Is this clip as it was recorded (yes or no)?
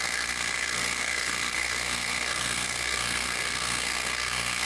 no